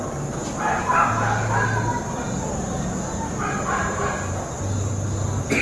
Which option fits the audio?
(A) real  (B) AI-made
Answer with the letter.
A